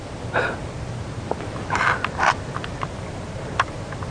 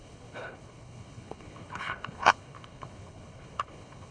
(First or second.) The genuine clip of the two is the first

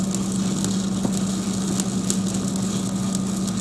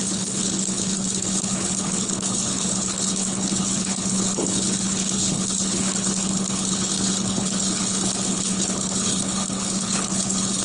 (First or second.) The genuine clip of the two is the first